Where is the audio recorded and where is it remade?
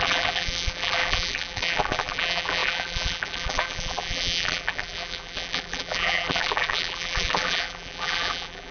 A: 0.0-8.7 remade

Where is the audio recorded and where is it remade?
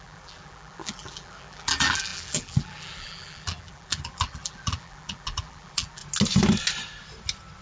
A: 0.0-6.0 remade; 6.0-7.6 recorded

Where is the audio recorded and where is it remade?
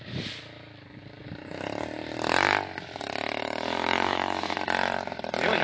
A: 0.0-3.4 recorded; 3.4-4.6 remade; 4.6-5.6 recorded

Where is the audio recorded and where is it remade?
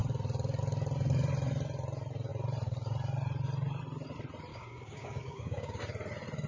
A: 0.0-4.5 recorded; 4.5-5.8 remade; 5.8-6.5 recorded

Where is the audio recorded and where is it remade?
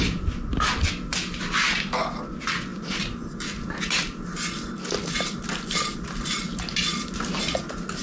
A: 0.0-8.0 recorded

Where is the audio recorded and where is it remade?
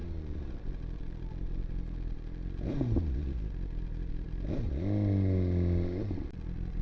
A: 0.0-6.8 recorded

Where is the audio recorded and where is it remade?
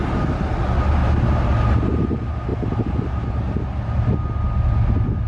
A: 0.0-5.3 recorded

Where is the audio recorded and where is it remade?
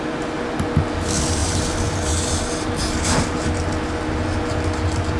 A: 0.0-1.4 recorded; 1.4-2.7 remade; 2.7-5.2 recorded